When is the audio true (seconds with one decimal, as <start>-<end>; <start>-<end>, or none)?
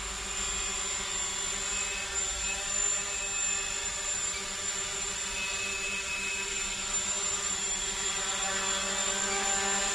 0.0-1.9; 2.7-3.8; 8.6-9.9